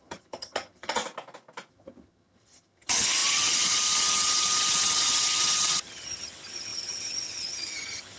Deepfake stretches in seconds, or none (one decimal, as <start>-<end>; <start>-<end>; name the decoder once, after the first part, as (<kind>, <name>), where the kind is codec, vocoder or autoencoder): 0.0-1.0 (vocoder, HiFi-GAN); 1.7-8.2